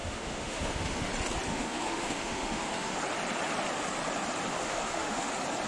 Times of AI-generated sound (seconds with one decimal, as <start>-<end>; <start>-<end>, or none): 0.0-1.1; 1.5-3.0; 4.5-5.3